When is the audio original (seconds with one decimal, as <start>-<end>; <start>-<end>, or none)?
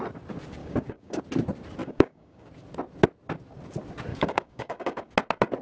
0.0-0.6; 1.2-1.8; 2.5-4.1; 5.1-5.6